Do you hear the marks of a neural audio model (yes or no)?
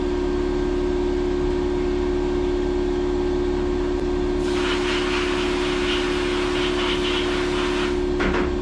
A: no